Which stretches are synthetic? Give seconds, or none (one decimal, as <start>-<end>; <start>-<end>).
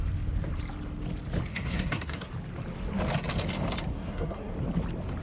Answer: 1.5-2.3; 3.9-4.5